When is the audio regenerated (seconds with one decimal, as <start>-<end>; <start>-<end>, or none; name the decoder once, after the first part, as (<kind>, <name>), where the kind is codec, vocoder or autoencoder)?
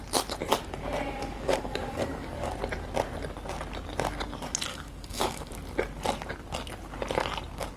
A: 1.2-2.5 (codec, DAC); 4.7-5.5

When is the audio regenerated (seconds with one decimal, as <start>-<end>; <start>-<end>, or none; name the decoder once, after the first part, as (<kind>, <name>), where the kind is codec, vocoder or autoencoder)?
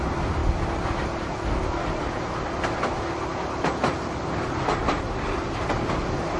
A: none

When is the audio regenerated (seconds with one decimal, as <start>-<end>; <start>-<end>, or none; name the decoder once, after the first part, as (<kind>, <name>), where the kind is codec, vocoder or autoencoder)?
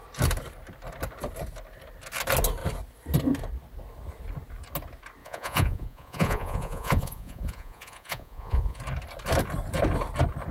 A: 5.2-8.8 (vocoder, Vocos)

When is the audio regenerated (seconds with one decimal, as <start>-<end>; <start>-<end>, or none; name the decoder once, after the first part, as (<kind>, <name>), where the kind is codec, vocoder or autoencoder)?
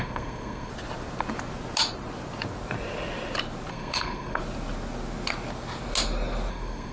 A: 0.0-0.7 (codec, SNAC); 3.7-4.4; 6.5-6.9